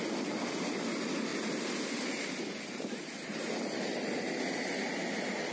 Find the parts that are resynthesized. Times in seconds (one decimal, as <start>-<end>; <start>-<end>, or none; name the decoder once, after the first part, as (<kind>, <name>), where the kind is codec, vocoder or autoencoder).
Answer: none